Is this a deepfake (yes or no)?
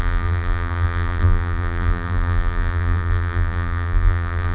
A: yes